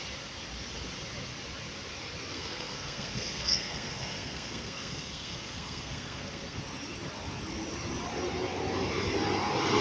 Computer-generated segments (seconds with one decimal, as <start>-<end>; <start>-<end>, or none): 2.3-6.6